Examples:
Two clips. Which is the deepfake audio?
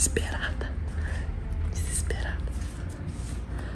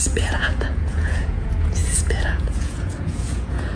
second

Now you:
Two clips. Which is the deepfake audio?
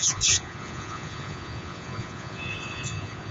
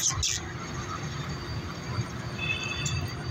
first